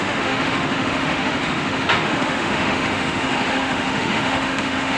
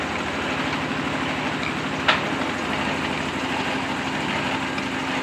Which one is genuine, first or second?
second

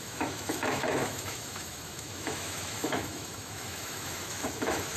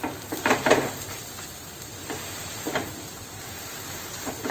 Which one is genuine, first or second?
second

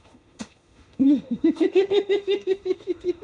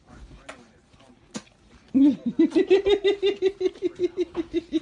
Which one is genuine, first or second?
second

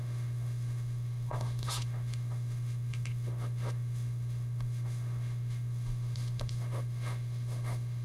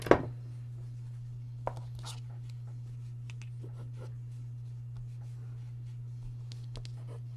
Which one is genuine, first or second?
second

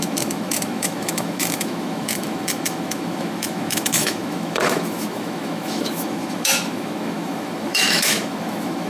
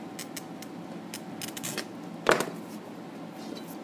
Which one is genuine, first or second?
second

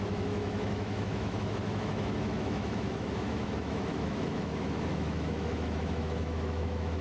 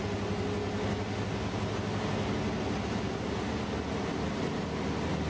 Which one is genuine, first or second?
second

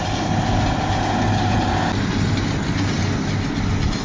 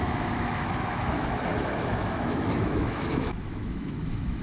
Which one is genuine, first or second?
first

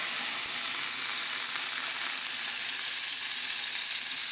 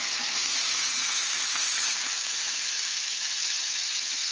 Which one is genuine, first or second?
first